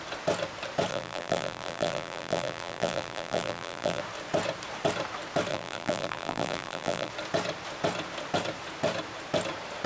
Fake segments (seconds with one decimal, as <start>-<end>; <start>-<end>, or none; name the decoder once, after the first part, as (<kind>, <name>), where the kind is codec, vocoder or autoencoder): 0.9-4.0 (vocoder, BigVGAN v2); 5.5-7.1